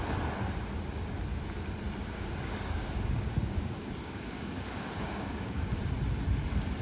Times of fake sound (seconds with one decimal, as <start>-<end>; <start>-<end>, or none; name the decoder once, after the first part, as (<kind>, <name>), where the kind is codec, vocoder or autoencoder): 2.0-5.8 (codec, DAC)